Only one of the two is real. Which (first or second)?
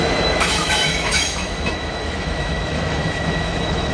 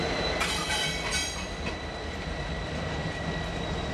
second